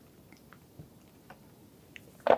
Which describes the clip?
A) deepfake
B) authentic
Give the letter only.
B